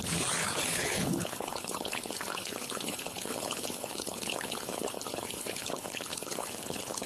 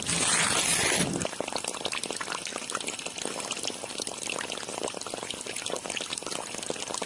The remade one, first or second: first